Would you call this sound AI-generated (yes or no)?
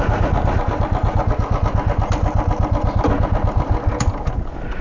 no